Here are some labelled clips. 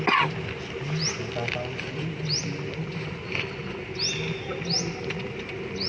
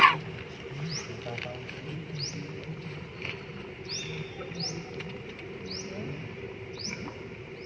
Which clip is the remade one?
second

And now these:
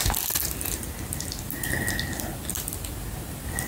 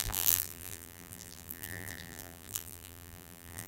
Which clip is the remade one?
second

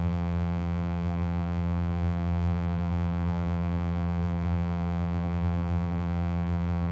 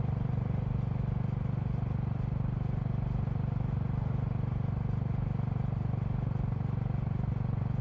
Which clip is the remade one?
first